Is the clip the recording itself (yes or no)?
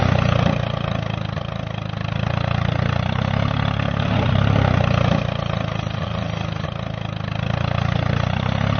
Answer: yes